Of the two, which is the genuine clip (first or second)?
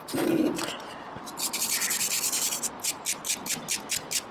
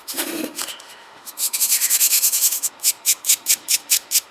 first